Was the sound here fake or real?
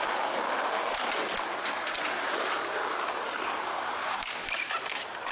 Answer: real